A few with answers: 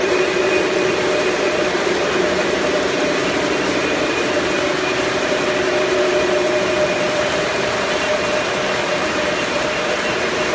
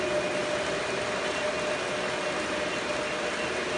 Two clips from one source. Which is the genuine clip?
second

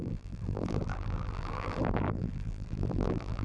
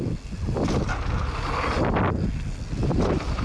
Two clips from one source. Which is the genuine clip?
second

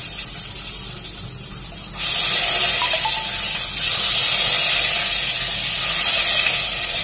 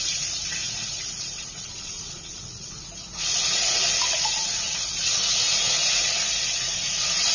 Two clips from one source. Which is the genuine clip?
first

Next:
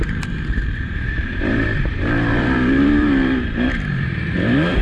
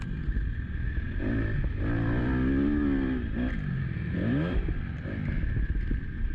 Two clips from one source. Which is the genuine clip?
second